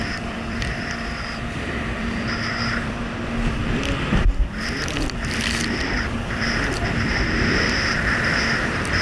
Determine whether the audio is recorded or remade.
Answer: remade